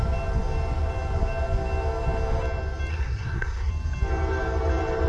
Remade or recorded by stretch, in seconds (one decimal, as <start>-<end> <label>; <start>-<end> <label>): 0.0-2.9 recorded; 2.9-3.7 remade; 3.7-5.1 recorded